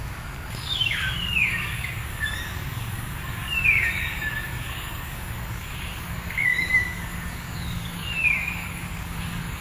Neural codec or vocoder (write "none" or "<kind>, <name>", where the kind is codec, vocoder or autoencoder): codec, DAC